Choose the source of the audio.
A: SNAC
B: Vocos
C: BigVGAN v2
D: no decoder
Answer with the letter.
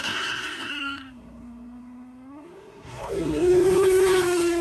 A